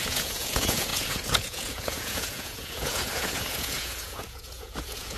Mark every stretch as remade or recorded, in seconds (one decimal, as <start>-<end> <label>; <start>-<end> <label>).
0.0-5.2 remade